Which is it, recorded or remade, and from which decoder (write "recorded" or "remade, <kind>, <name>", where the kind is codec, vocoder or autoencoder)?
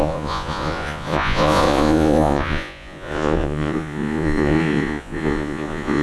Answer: remade, vocoder, Vocos